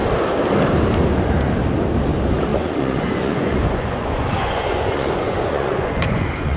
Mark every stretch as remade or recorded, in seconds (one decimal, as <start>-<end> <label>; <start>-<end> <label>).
0.0-2.5 recorded; 2.5-6.6 remade